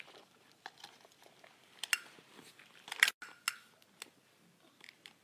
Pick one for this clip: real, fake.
real